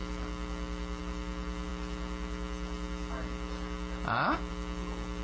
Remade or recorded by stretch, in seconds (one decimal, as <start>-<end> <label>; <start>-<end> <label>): 0.0-5.2 recorded